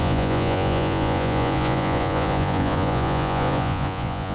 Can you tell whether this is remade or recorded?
remade